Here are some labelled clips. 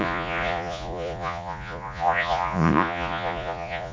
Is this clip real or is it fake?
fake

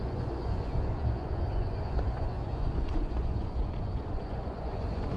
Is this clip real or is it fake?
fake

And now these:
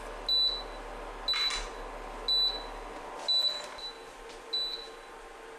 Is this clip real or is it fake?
real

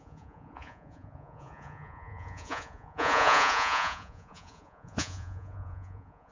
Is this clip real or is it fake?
fake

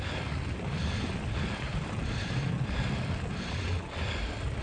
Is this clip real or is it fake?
real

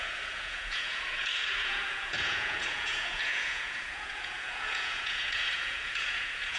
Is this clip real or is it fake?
fake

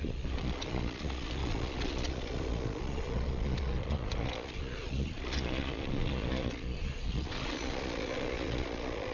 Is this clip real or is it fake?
fake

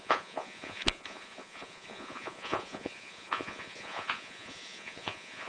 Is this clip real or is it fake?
fake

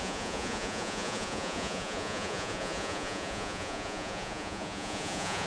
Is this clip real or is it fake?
fake